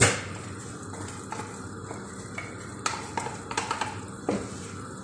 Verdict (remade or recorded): recorded